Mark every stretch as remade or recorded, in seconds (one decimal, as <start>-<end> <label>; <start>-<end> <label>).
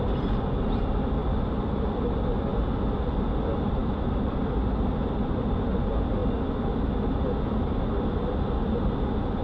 0.0-9.4 recorded